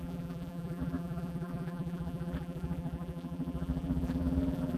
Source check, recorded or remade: remade